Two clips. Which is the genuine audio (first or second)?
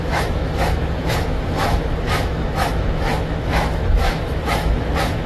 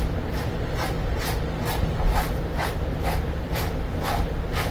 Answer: second